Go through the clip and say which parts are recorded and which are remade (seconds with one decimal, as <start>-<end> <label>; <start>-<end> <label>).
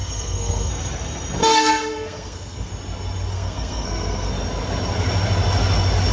0.0-0.7 remade; 0.7-1.4 recorded; 1.4-2.7 remade; 2.7-3.3 recorded; 3.3-4.3 remade; 4.3-6.1 recorded